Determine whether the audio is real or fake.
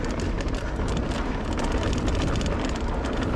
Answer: real